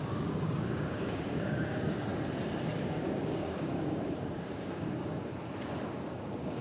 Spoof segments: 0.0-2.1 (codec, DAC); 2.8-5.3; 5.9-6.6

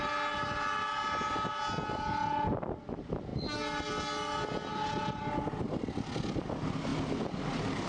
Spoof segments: none